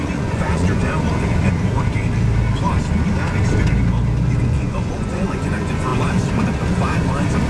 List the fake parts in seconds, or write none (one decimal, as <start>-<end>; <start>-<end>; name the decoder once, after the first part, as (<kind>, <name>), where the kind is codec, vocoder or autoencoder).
0.0-0.8 (vocoder, Vocos); 4.4-5.9